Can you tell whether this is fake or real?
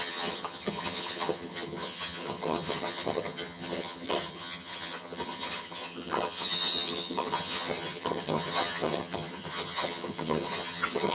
fake